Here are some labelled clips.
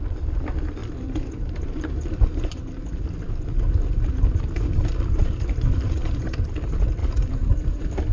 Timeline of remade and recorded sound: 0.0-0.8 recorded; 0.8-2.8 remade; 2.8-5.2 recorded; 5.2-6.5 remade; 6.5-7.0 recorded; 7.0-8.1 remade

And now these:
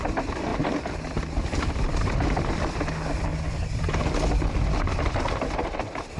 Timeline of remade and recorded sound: 0.0-0.5 remade; 0.5-1.7 recorded; 1.7-3.3 remade; 3.3-4.0 recorded; 4.0-6.2 remade

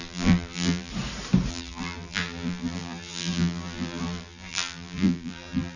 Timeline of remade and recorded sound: 0.0-0.9 remade; 0.9-1.5 recorded; 1.5-5.8 remade

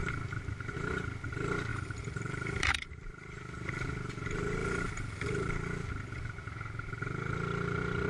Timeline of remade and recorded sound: 0.0-1.7 recorded; 1.7-2.9 remade; 2.9-4.6 recorded; 4.6-5.5 remade; 5.5-8.1 recorded

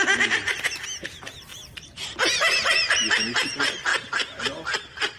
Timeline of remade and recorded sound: 0.0-1.5 recorded; 1.5-2.7 remade; 2.7-5.2 recorded